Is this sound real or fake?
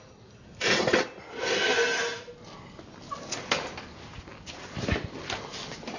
real